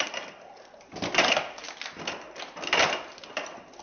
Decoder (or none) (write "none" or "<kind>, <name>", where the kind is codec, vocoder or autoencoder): none